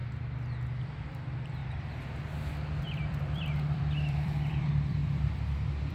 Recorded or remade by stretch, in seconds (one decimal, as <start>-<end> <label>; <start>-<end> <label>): 0.0-0.8 recorded; 0.8-1.6 remade; 1.6-2.8 recorded; 2.8-5.0 remade; 5.0-5.9 recorded